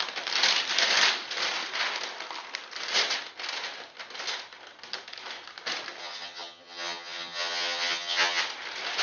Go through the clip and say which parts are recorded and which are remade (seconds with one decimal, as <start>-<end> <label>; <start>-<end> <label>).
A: 0.0-6.0 recorded; 6.0-8.4 remade; 8.4-9.0 recorded

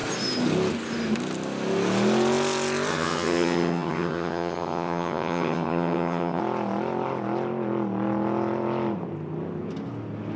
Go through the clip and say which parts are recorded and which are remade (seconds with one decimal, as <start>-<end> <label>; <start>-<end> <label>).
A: 0.0-2.9 recorded; 2.9-6.4 remade; 6.4-10.4 recorded